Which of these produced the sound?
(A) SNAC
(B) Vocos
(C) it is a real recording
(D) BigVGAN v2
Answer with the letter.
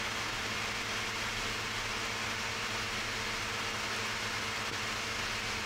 C